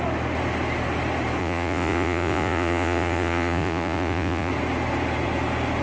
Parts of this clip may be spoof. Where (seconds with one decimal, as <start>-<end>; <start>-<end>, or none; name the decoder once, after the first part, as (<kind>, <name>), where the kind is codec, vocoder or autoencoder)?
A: 1.4-4.5 (vocoder, Vocos)